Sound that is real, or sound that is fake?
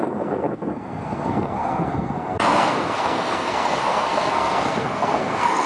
fake